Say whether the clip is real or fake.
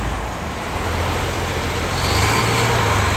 real